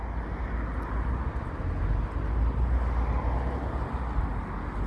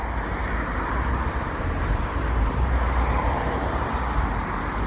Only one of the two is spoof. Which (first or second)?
second